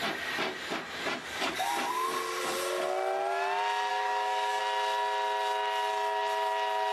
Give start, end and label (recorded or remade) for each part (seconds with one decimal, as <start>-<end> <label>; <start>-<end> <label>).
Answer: 0.0-1.2 recorded; 1.2-1.7 remade; 1.7-3.9 recorded; 3.9-4.6 remade; 4.6-6.9 recorded